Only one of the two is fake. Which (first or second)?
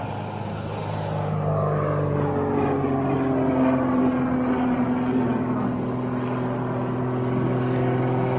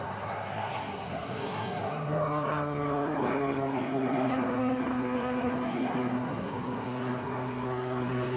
second